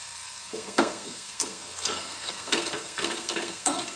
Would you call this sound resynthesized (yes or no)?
yes